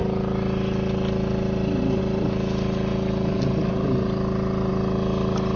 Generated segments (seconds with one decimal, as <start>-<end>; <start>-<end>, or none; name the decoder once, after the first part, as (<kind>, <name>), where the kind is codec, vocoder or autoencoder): none